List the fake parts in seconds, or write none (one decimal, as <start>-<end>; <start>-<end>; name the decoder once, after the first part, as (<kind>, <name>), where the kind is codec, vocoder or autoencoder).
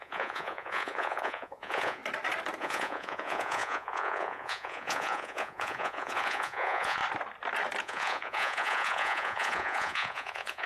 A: 0.0-2.0 (vocoder, Vocos); 2.6-7.0; 7.8-10.7